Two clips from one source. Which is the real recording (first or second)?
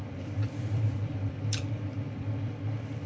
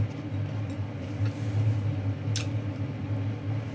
second